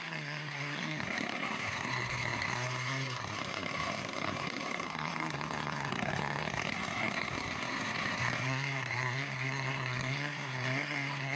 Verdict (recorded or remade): remade